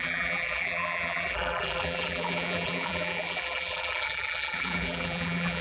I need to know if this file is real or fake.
fake